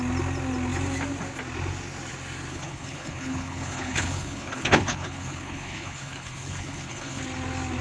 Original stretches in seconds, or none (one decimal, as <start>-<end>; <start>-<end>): 0.0-2.5; 7.2-7.8